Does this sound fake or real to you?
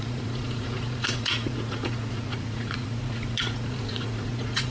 fake